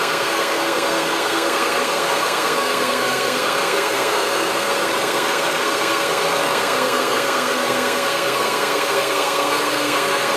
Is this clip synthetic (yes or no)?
yes